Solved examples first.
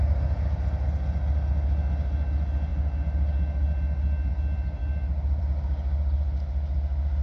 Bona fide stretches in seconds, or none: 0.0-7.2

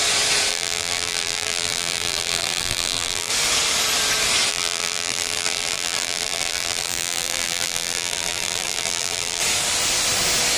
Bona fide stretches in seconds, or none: 0.0-0.5; 3.3-4.5; 9.4-10.6

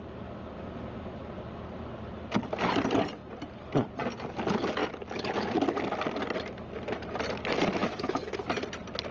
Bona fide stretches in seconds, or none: 0.0-7.8; 8.3-9.1

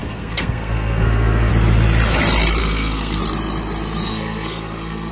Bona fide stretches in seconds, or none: 1.5-2.6; 3.2-4.1

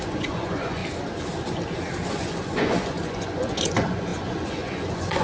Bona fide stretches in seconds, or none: 0.8-2.1

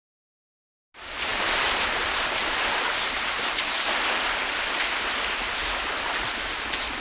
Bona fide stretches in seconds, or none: 0.0-1.3; 2.7-7.0

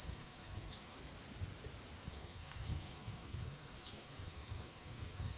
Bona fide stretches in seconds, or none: 1.0-2.0